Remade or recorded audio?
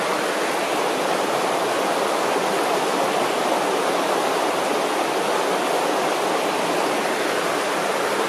recorded